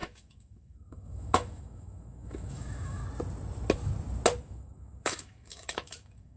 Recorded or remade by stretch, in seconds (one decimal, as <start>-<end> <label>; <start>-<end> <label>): 0.0-3.0 remade; 3.0-4.4 recorded; 4.4-6.4 remade